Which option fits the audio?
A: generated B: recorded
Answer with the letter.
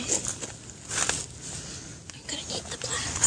B